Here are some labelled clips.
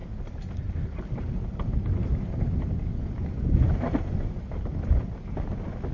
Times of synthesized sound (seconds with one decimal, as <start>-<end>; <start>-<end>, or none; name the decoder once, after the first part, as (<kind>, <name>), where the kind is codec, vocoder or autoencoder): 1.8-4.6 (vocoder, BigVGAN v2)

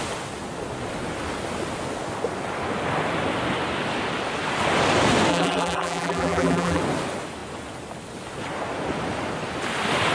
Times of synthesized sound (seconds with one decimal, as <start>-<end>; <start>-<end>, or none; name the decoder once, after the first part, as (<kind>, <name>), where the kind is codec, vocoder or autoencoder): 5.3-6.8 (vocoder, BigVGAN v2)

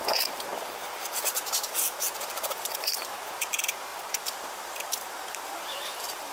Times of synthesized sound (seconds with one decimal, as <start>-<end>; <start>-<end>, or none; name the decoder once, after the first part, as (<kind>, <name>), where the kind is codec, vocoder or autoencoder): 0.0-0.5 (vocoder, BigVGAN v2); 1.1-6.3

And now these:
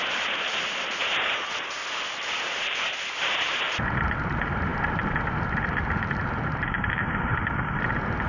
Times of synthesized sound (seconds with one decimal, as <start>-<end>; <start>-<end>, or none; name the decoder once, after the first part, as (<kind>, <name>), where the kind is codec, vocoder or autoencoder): 0.0-1.8 (vocoder, BigVGAN v2); 2.3-7.3

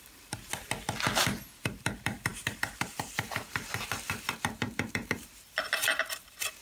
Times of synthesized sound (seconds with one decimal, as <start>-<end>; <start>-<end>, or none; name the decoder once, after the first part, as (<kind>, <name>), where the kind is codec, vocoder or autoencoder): 0.0-0.5 (vocoder, BigVGAN v2); 1.6-6.6

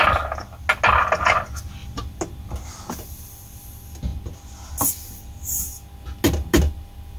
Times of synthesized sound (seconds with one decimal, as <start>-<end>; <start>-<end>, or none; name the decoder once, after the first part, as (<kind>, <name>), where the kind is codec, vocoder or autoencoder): none

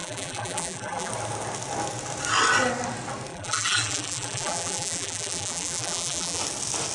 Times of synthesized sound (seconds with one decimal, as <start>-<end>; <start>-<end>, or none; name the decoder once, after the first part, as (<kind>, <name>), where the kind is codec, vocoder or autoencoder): 0.0-1.1 (vocoder, BigVGAN v2); 3.3-6.4

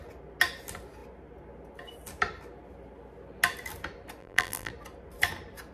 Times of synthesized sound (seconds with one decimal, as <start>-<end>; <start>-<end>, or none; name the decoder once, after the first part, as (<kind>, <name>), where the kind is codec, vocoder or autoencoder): 4.2-4.7 (vocoder, BigVGAN v2)